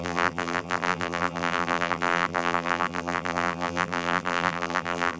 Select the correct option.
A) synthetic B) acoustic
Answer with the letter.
A